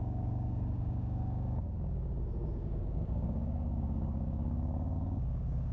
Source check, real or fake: fake